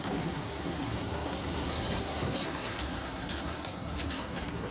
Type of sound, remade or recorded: remade